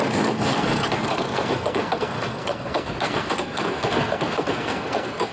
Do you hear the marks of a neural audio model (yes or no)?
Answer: yes